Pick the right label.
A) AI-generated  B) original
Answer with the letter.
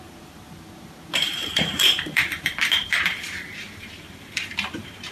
A